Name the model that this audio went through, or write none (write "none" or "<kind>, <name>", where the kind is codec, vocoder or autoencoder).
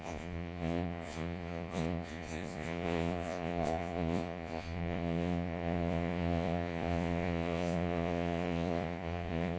vocoder, Vocos